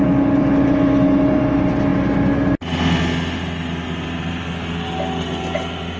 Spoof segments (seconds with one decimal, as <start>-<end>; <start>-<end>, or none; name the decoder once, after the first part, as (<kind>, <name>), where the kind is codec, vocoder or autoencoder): none